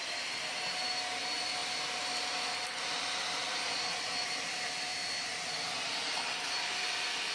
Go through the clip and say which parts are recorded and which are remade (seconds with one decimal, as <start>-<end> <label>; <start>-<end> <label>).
0.0-4.9 remade; 4.9-5.5 recorded; 5.5-7.3 remade